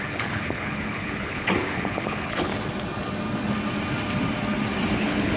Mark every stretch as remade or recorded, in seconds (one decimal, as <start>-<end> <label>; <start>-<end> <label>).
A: 0.0-2.5 remade; 2.5-5.0 recorded; 5.0-5.4 remade